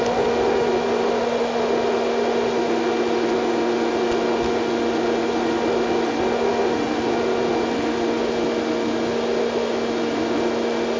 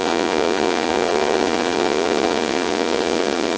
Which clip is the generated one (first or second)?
second